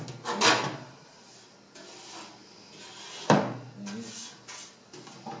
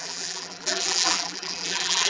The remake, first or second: second